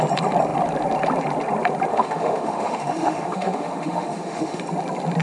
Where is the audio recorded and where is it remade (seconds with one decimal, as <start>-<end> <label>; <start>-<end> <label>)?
0.0-1.9 recorded; 1.9-4.6 remade; 4.6-5.2 recorded